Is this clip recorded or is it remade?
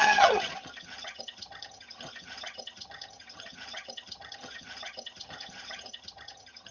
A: remade